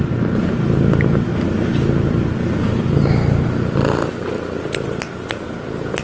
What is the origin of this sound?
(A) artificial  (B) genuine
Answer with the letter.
B